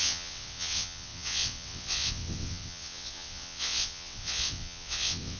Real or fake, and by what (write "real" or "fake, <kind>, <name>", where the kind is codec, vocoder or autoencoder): fake, vocoder, WaveNeXt